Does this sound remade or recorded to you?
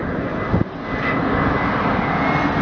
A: recorded